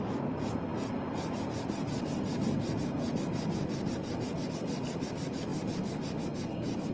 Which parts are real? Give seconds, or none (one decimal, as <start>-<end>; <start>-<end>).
0.0-6.9